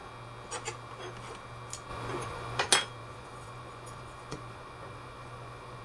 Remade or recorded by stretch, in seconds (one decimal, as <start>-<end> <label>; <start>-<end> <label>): 0.0-1.9 recorded; 1.9-2.6 remade; 2.6-3.0 recorded; 3.0-5.8 remade